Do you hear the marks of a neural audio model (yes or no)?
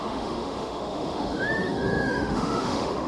yes